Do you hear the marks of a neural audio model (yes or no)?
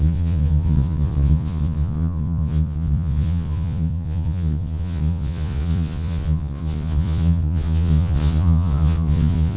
yes